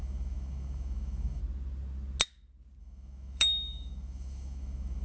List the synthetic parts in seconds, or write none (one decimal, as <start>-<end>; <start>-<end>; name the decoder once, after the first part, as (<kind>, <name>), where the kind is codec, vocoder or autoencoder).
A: 0.0-1.4 (autoencoder, DAC-VAE); 2.8-5.0